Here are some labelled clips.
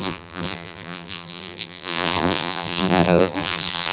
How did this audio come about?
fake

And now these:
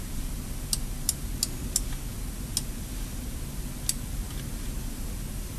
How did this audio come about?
real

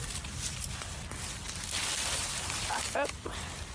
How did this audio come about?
real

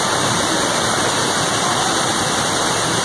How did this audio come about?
real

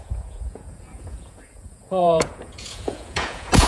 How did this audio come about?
fake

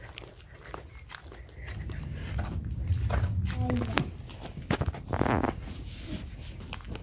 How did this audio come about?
real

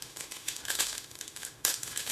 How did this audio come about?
fake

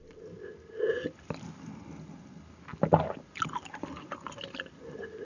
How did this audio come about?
real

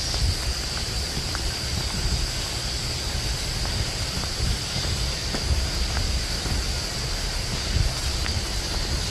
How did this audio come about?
real